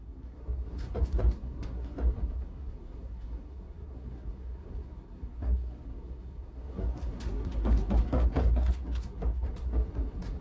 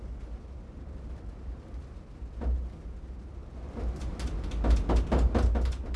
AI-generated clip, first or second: first